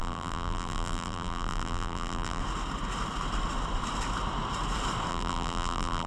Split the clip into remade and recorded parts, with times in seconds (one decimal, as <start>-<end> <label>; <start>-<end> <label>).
0.0-2.4 remade; 2.4-5.1 recorded; 5.1-6.1 remade